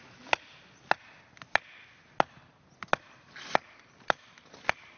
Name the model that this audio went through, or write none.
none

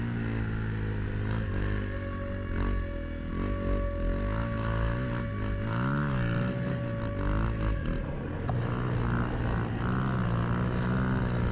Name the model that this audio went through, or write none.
none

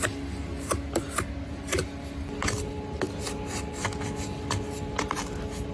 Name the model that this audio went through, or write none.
none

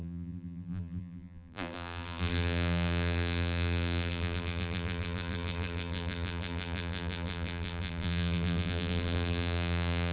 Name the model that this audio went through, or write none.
vocoder, BigVGAN v2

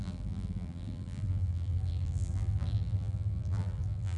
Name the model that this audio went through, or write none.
vocoder, BigVGAN v2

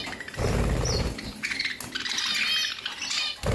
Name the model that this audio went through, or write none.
none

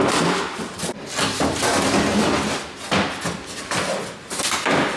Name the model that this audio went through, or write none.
vocoder, BigVGAN v2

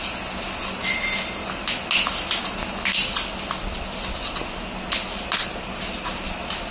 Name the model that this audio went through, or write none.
none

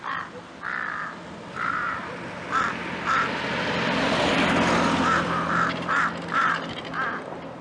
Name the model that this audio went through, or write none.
none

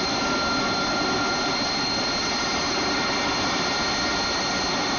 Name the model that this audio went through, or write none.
none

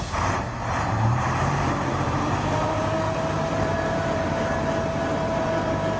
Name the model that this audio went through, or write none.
vocoder, BigVGAN v2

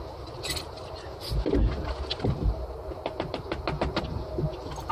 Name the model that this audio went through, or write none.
none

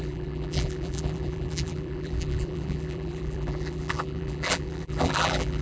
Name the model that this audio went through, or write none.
vocoder, BigVGAN v2